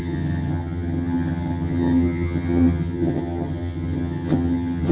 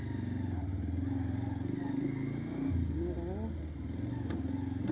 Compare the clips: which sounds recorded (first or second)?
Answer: second